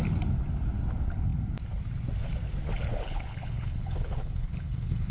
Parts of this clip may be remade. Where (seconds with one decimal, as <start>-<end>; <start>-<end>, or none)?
2.9-5.1